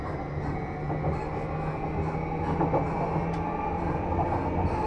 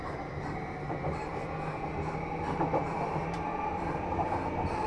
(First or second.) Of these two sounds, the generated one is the second